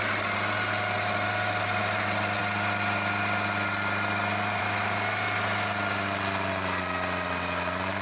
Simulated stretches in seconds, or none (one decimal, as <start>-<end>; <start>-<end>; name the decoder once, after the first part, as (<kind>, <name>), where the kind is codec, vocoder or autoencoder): none